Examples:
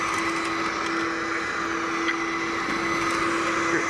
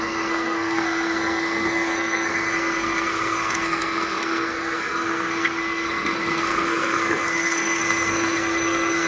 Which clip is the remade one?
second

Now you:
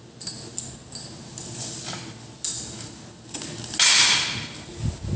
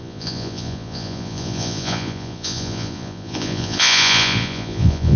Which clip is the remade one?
second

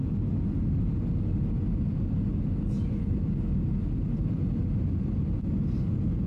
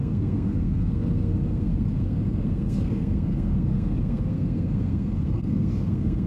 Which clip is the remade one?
second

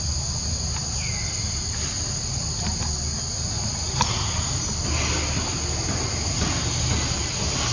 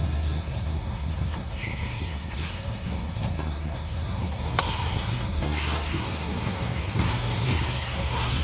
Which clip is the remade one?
second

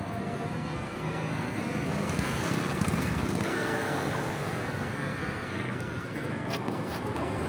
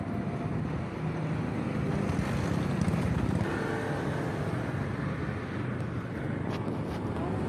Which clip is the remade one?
first